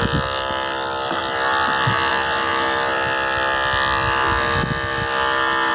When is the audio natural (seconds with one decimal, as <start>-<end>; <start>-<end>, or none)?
0.0-5.7